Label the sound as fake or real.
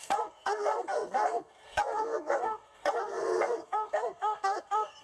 fake